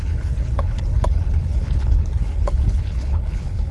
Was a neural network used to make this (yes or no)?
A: yes